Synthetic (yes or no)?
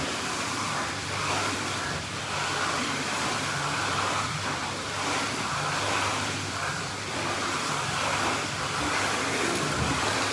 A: yes